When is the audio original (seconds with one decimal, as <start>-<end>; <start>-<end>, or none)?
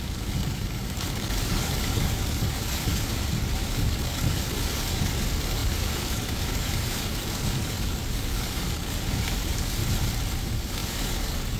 9.8-10.4